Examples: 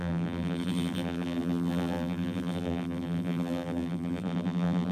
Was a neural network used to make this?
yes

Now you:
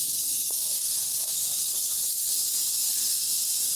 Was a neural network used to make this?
yes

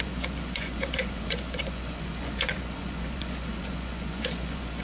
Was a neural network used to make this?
yes